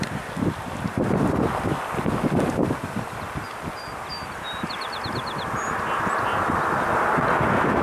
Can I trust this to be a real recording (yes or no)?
yes